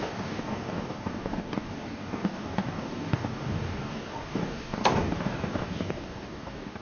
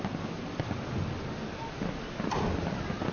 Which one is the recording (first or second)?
second